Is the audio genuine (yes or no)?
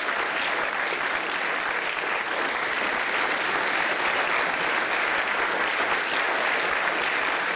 yes